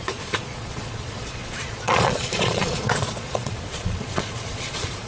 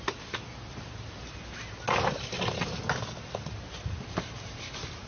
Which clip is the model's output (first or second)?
first